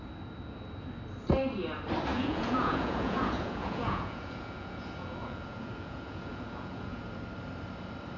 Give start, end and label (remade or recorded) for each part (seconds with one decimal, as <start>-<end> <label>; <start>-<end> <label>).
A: 0.0-2.1 recorded; 2.1-7.0 remade; 7.0-8.2 recorded